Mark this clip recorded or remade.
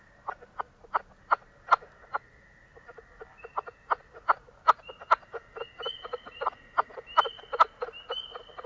recorded